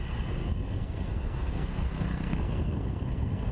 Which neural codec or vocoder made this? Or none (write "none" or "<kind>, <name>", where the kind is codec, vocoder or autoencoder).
codec, SNAC